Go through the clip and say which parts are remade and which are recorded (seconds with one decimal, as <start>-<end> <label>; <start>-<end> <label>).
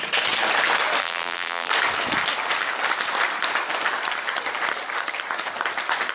0.0-1.0 recorded; 1.0-1.7 remade; 1.7-6.1 recorded